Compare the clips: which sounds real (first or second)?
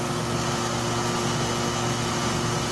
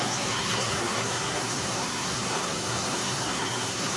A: first